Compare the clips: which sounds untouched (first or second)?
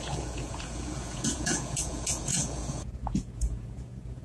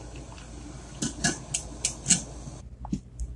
second